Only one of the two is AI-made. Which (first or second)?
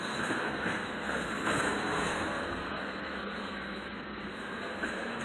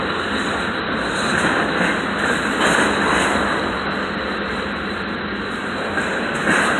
first